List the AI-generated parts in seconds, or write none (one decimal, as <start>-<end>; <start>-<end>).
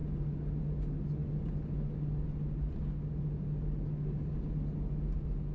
none